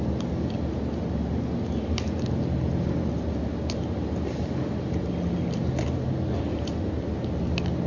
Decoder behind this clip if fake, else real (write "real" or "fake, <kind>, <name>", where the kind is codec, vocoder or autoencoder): real